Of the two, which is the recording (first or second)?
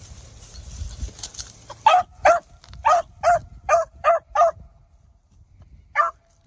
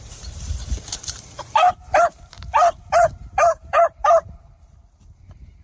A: first